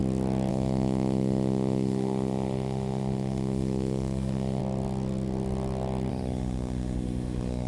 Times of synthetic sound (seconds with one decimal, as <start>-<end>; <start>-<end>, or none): 0.5-4.6; 6.1-7.7